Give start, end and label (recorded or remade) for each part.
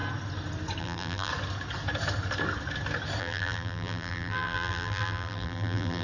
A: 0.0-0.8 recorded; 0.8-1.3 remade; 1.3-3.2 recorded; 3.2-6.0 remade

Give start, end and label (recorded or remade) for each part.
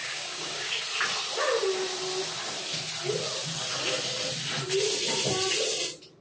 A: 0.0-0.8 remade; 0.8-6.2 recorded